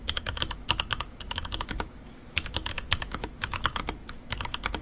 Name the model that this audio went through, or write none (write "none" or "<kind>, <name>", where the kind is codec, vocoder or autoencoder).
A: autoencoder, DAC-VAE